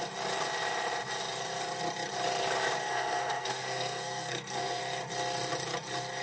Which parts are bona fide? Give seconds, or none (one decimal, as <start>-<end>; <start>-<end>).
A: 0.0-2.8; 4.8-6.2